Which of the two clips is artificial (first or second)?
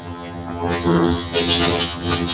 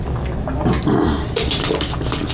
first